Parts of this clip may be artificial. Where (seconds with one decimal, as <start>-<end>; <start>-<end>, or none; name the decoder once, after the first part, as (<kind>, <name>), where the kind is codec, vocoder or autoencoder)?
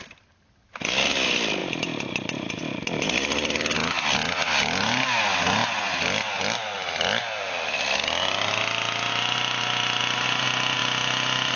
1.6-2.6 (vocoder, BigVGAN v2)